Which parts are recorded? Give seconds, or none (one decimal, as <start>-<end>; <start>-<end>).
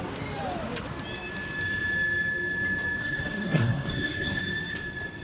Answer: 0.0-3.0; 4.4-5.2